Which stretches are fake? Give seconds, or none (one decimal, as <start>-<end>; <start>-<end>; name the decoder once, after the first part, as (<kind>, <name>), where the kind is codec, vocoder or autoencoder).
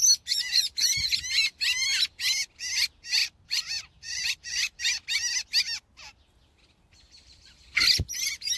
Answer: 3.2-4.8 (vocoder, BigVGAN v2)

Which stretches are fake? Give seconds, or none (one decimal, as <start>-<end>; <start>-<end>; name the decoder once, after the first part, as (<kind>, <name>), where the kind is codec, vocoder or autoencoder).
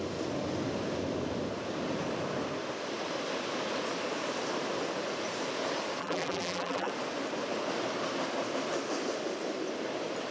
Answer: 6.0-6.9 (vocoder, BigVGAN v2)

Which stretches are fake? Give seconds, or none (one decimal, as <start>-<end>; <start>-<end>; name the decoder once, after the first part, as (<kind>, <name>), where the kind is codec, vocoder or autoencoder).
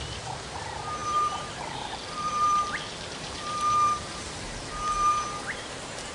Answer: 1.0-4.7 (vocoder, BigVGAN v2)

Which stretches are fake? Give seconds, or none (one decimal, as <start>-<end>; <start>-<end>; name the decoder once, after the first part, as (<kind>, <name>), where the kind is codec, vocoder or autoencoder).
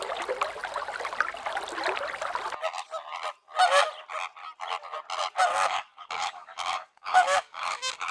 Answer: 5.5-8.1 (codec, DAC)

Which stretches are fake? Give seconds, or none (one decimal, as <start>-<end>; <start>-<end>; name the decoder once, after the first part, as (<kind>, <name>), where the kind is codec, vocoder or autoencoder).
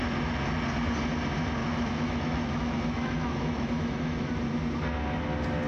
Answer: 1.6-4.3 (autoencoder, DAC-VAE)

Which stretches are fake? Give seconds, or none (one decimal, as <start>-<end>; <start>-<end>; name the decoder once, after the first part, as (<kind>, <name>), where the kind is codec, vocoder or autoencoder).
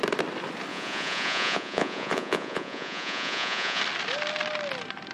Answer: 0.7-3.8 (vocoder, Vocos)